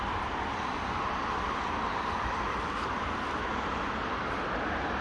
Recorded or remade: remade